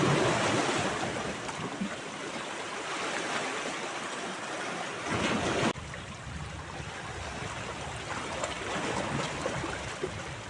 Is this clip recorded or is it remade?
recorded